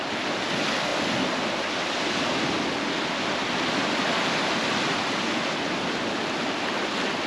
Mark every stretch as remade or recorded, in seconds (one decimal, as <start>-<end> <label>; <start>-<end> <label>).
0.0-7.3 recorded